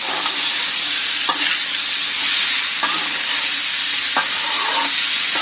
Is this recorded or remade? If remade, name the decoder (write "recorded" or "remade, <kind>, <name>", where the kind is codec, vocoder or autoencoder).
recorded